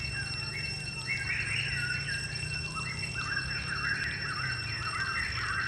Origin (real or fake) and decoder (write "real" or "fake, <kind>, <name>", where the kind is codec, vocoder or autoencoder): real